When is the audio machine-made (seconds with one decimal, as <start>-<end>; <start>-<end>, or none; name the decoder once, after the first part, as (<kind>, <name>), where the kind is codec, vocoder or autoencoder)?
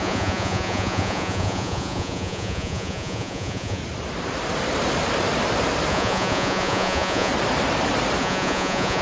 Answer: 0.0-3.8 (vocoder, Vocos); 5.9-7.3; 8.2-9.0